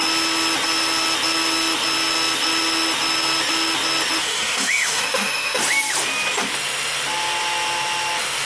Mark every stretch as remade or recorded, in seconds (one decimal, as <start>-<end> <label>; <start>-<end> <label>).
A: 0.0-4.2 recorded; 4.2-5.6 remade; 5.6-8.4 recorded